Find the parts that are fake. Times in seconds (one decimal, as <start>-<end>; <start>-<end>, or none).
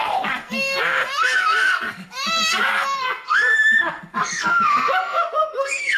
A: 0.0-6.0